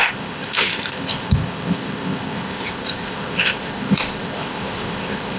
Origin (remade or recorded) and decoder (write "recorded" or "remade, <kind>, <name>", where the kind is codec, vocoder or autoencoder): remade, codec, ZipCodec